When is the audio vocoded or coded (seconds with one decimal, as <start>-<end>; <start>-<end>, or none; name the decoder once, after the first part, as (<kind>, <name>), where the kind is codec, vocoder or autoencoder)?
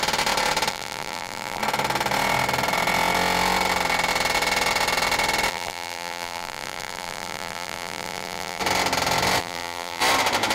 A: 0.7-1.6 (vocoder, BigVGAN v2); 5.5-8.6; 9.4-10.0